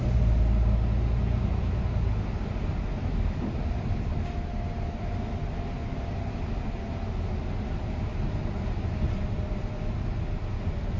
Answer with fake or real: real